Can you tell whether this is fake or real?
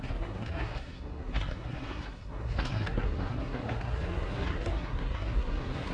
fake